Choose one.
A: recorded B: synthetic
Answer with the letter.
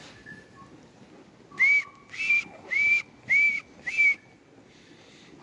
A